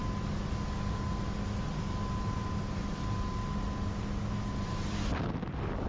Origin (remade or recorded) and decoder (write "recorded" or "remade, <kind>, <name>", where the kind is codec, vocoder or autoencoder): recorded